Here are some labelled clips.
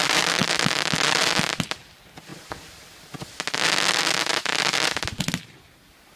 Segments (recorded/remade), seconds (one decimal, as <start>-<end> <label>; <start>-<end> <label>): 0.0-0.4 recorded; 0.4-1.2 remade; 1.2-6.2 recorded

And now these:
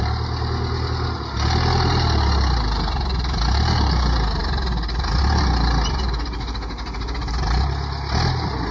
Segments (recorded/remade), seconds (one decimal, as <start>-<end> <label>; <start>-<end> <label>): 0.0-8.7 recorded

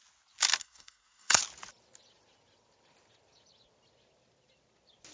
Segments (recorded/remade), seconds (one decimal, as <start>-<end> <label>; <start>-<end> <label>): 0.0-0.6 recorded; 0.6-1.4 remade; 1.4-5.1 recorded

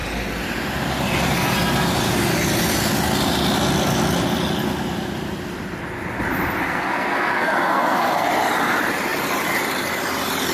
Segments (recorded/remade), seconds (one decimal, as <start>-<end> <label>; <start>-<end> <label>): 0.0-6.6 recorded; 6.6-8.3 remade; 8.3-10.5 recorded

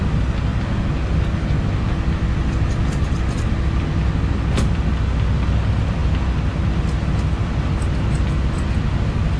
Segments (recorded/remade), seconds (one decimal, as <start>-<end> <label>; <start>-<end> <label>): 0.0-9.4 recorded

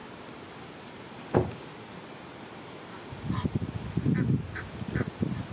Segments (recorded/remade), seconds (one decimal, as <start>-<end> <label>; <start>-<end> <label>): 0.0-5.5 recorded

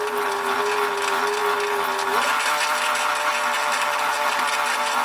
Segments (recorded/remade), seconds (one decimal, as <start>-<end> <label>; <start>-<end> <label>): 0.0-3.6 recorded; 3.6-4.4 remade; 4.4-5.0 recorded